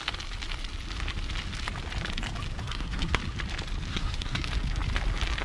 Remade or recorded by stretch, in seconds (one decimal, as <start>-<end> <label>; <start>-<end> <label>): 0.0-2.6 recorded; 2.6-3.2 remade; 3.2-3.9 recorded; 3.9-4.5 remade; 4.5-5.4 recorded